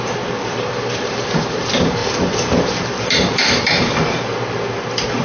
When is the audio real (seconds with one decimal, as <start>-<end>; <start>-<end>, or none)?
none